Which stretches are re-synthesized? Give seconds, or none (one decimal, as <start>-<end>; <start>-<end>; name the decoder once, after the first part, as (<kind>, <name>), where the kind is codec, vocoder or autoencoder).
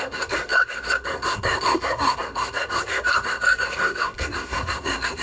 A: 0.0-5.2 (codec, SNAC)